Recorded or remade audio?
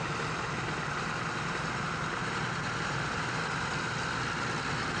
recorded